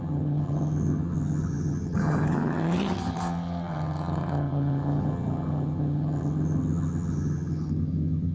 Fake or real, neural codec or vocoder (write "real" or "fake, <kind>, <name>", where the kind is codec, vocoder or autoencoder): fake, vocoder, HiFi-GAN